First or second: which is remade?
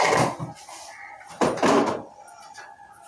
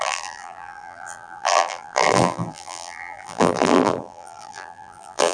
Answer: second